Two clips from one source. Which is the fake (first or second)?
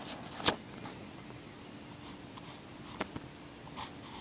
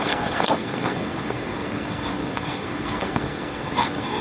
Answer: second